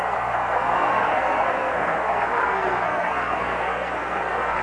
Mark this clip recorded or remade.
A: remade